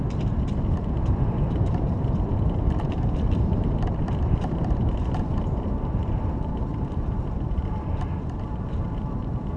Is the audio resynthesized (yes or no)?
yes